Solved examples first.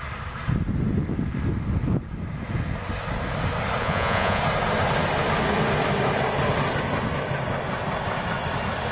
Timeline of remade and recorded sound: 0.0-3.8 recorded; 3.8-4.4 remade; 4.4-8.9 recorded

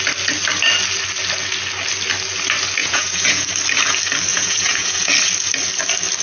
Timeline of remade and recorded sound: 0.0-2.8 recorded; 2.8-3.5 remade; 3.5-4.3 recorded; 4.3-5.1 remade; 5.1-6.2 recorded